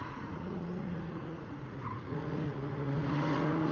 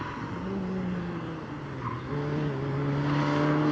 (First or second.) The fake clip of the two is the first